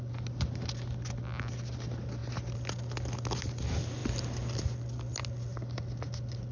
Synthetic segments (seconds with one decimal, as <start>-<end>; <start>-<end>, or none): none